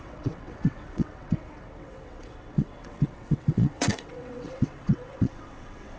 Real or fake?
fake